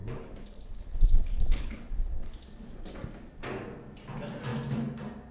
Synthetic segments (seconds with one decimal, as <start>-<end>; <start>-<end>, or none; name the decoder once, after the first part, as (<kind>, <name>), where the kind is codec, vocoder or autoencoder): 0.0-2.4 (codec, HILCodec)